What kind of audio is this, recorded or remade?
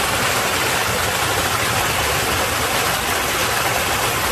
recorded